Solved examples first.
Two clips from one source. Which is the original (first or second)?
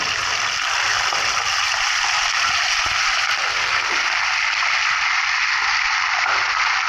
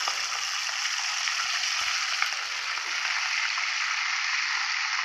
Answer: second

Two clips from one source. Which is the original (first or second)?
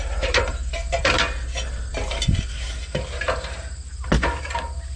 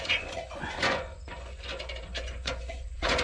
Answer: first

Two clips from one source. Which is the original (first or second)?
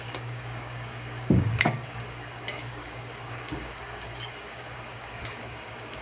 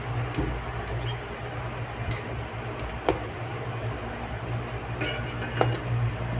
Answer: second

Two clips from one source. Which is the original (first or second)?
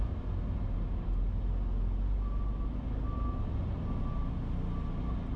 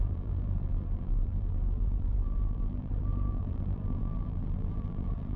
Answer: first